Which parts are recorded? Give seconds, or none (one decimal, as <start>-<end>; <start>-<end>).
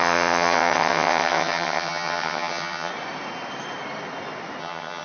2.9-4.6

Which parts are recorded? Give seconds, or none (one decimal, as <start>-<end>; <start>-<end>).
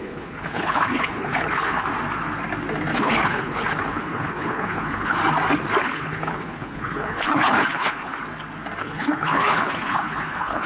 1.9-3.0; 5.2-5.8; 8.2-8.8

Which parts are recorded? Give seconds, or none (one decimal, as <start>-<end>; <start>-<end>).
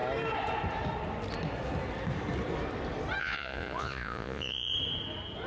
0.0-3.2; 4.7-5.5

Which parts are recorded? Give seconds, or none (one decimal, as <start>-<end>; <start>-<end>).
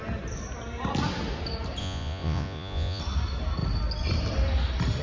0.0-1.8; 3.0-5.0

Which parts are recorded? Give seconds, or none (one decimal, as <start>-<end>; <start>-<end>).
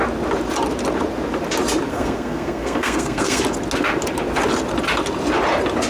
0.0-1.9; 3.4-5.9